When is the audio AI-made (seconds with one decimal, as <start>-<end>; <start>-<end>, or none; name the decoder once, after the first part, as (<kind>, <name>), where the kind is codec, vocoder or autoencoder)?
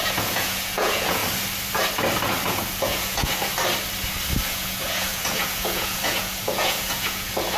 0.0-1.2 (vocoder, Vocos); 2.5-3.4; 4.4-7.6